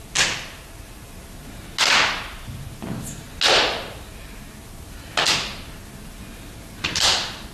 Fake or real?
real